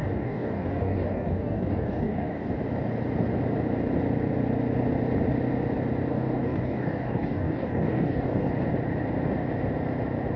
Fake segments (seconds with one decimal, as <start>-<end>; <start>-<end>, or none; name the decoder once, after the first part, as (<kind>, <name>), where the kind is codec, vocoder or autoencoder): 0.0-2.5 (codec, DAC); 6.1-8.5